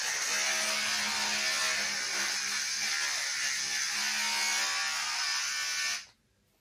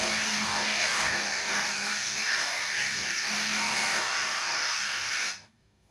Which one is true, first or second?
first